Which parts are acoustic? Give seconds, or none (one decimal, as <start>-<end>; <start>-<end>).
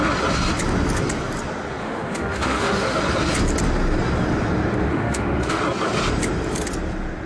0.0-1.8; 3.0-4.9; 5.6-7.3